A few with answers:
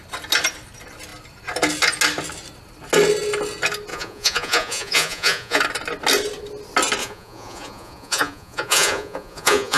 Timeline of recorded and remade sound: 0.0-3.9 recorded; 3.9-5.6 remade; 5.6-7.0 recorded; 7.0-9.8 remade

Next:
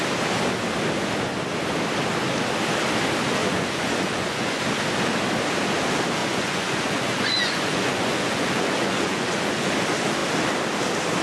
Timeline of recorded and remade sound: 0.0-3.4 recorded; 3.4-4.6 remade; 4.6-6.2 recorded; 6.2-9.7 remade; 9.7-11.2 recorded

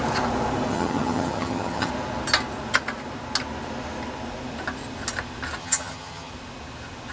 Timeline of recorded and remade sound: 0.0-0.7 recorded; 0.7-1.9 remade; 1.9-5.6 recorded; 5.6-6.3 remade; 6.3-7.1 recorded

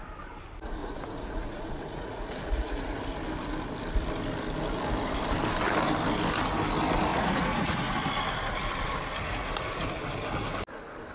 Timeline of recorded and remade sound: 0.0-0.8 recorded; 0.8-3.0 remade; 3.0-7.1 recorded; 7.1-7.9 remade; 7.9-11.1 recorded

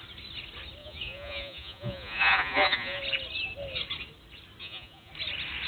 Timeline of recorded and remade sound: 0.0-0.8 recorded; 0.8-3.0 remade; 3.0-4.6 recorded; 4.6-5.1 remade; 5.1-5.7 recorded